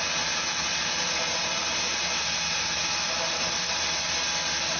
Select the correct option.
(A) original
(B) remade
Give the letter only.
A